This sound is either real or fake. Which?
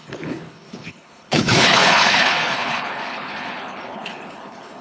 fake